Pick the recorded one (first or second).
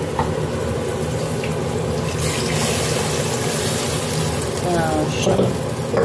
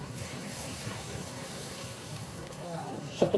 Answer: first